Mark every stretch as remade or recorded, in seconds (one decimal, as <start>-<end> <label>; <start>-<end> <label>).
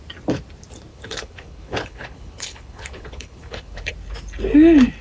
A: 0.0-0.9 recorded; 0.9-3.9 remade; 3.9-5.0 recorded